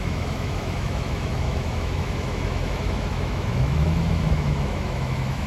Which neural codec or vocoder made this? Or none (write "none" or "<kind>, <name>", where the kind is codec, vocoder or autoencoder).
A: autoencoder, DAC-VAE